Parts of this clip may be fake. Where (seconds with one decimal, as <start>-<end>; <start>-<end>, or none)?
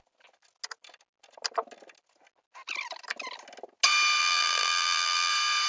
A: 4.2-5.3